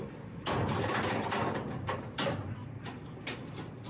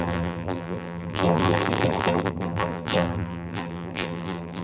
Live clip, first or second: first